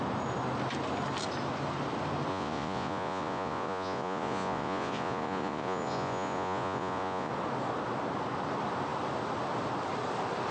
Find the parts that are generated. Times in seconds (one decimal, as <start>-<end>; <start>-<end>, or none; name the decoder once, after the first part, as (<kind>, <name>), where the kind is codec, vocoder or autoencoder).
2.3-7.3 (vocoder, Vocos)